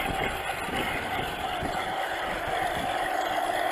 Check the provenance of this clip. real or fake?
real